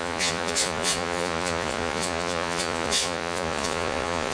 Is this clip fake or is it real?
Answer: fake